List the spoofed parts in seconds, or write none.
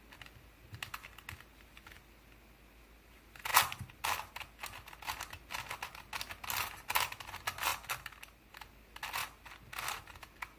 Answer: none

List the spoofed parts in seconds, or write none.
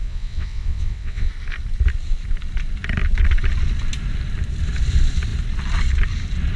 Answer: 0.0-1.3 (vocoder, WaveNeXt)